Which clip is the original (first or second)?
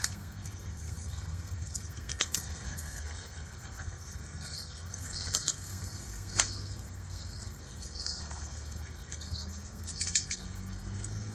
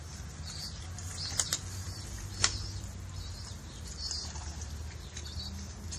second